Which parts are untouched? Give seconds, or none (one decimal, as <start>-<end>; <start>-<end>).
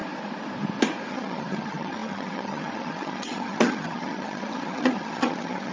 0.0-1.1